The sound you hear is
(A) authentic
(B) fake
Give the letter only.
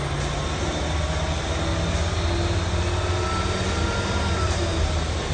A